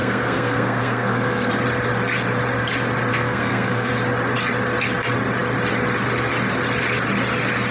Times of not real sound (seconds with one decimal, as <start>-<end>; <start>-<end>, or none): 0.0-1.5; 3.1-3.9